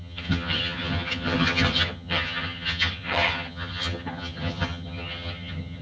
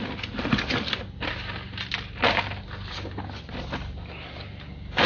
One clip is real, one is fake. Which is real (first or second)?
second